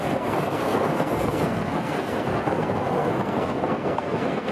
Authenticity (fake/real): fake